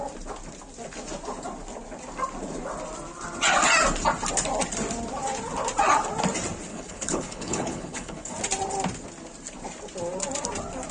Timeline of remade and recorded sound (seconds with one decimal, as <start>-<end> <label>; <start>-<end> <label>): 0.0-6.7 recorded; 6.7-8.3 remade; 8.3-10.9 recorded